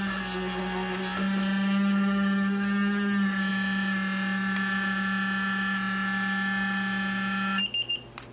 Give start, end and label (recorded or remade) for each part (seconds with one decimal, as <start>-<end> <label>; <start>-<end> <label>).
0.0-8.3 recorded